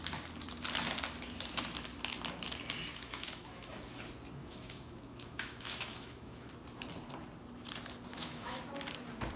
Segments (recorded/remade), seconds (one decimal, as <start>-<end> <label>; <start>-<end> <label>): 0.0-2.9 recorded; 2.9-3.7 remade; 3.7-4.4 recorded; 4.4-6.5 remade; 6.5-8.1 recorded; 8.1-8.6 remade; 8.6-9.4 recorded